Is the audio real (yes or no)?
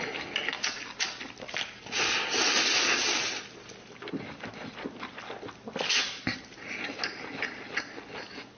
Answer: yes